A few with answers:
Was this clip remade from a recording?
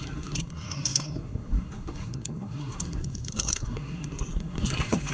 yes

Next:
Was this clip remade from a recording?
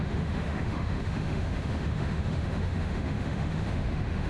yes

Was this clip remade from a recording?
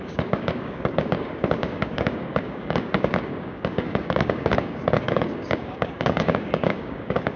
yes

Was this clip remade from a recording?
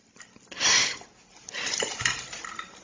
no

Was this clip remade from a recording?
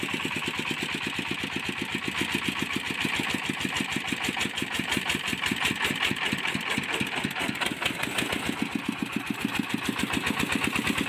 no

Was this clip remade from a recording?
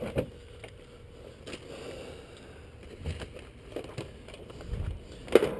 no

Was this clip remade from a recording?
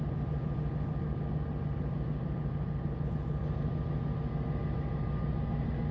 no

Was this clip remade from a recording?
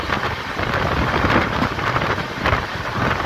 no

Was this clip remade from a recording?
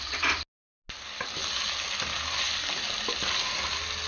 no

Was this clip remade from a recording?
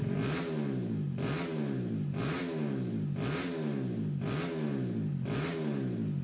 no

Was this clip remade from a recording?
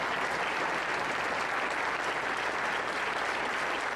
no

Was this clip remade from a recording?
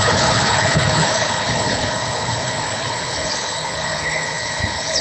yes